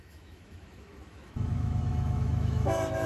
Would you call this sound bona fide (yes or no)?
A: no